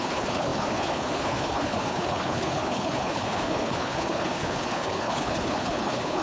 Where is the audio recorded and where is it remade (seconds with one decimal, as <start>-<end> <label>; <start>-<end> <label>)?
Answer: 0.0-6.2 remade